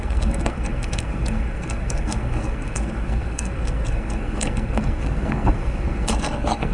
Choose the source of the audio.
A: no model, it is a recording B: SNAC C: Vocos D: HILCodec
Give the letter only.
B